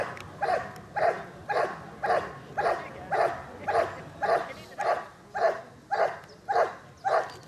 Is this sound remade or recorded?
recorded